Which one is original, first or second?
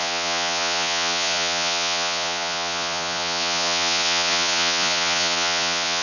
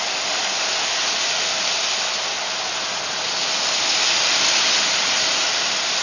second